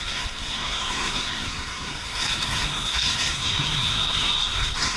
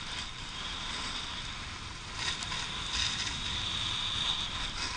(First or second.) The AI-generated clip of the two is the first